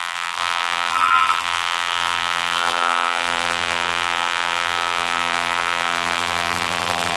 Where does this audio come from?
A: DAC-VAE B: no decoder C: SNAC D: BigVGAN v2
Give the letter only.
D